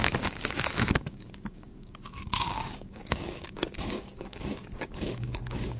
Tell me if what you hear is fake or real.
fake